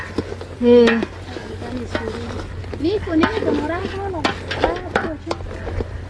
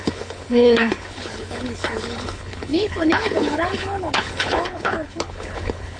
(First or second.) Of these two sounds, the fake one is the second